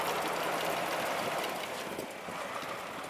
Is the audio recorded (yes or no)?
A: yes